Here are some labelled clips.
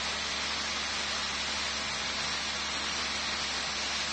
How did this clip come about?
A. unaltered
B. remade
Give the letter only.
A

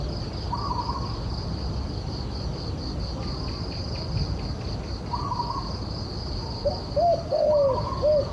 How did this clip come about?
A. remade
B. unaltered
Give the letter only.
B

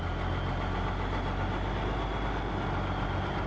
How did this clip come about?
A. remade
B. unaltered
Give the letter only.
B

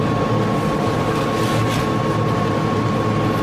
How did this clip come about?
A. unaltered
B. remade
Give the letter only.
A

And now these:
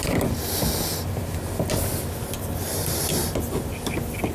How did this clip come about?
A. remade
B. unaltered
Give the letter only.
B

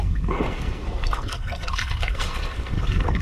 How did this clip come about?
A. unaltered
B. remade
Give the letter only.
B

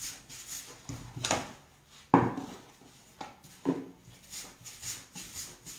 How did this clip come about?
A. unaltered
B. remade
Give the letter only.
A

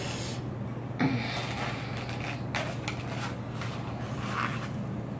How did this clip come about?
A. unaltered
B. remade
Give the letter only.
A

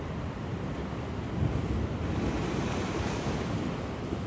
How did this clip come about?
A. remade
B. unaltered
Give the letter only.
B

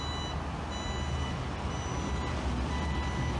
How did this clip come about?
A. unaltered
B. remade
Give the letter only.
A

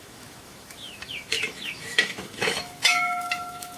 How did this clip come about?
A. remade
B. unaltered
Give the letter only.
A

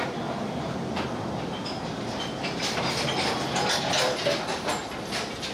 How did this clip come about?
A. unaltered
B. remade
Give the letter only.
A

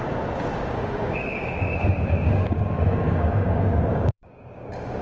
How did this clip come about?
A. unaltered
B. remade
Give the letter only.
B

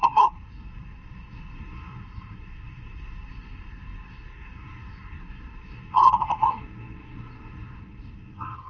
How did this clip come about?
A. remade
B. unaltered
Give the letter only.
A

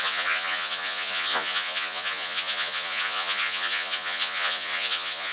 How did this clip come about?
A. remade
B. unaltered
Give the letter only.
A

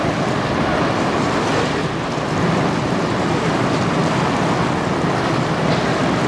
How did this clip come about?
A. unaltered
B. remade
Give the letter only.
A